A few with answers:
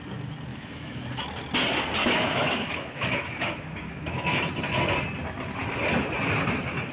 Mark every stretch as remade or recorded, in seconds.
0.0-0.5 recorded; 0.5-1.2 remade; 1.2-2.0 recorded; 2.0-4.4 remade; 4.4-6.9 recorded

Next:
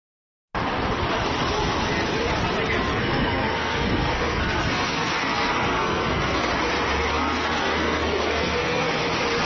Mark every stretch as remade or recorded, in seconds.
0.0-2.9 recorded; 2.9-6.5 remade; 6.5-7.1 recorded; 7.1-9.1 remade; 9.1-9.5 recorded